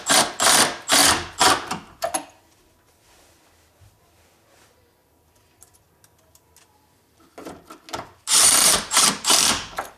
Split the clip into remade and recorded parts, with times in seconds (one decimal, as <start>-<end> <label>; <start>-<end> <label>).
0.0-10.0 recorded